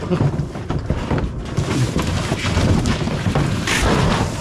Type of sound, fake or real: fake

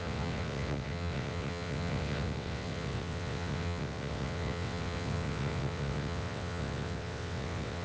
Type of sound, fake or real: fake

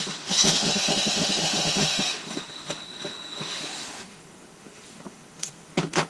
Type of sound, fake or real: fake